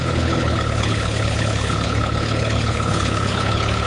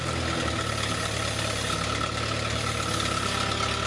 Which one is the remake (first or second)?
first